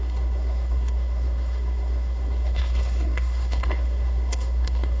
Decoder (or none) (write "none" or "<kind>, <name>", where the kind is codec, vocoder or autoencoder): codec, SNAC